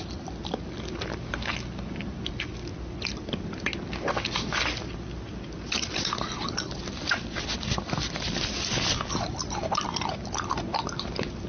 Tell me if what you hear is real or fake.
real